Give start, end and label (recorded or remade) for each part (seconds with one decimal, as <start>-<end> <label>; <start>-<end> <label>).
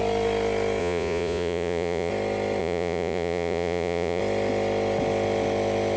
0.0-0.8 recorded; 0.8-2.1 remade; 2.1-2.6 recorded; 2.6-4.2 remade; 4.2-6.0 recorded